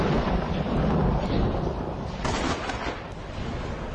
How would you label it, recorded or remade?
remade